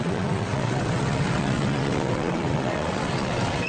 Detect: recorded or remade remade